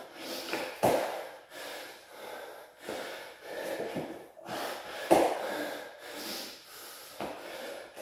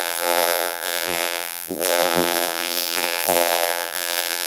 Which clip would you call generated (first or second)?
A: second